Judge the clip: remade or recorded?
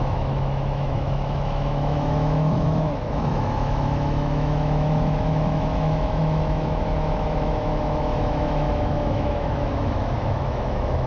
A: remade